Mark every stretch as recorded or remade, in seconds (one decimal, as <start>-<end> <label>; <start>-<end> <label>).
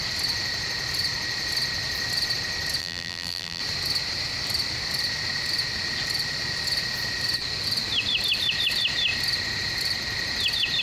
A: 0.0-2.8 recorded; 2.8-3.6 remade; 3.6-10.8 recorded